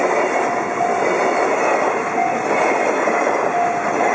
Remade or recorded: recorded